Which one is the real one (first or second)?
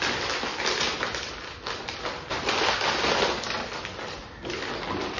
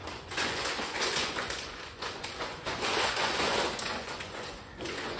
first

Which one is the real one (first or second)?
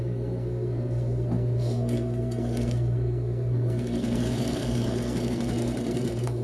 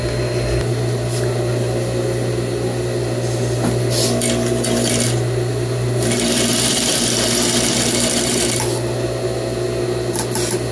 second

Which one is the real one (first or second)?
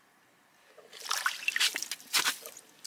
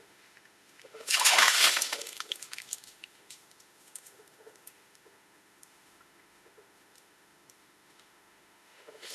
first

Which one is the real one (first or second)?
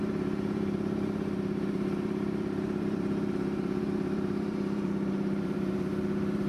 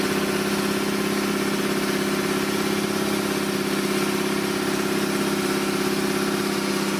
second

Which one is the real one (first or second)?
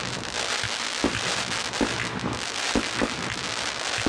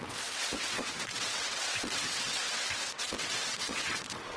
first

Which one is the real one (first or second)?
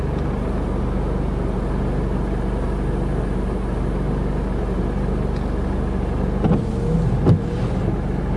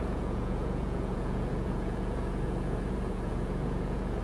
first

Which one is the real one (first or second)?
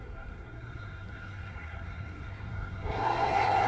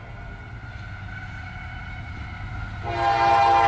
second